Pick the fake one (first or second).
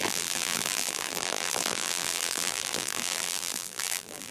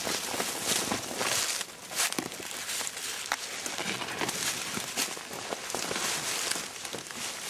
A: first